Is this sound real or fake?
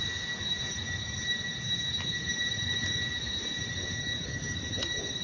real